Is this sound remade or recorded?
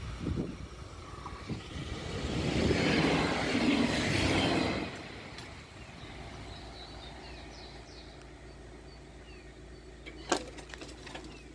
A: recorded